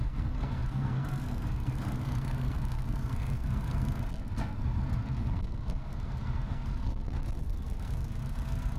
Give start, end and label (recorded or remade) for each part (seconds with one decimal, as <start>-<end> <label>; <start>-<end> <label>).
0.0-8.8 remade